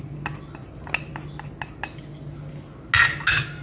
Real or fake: real